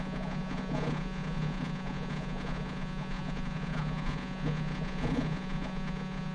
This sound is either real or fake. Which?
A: fake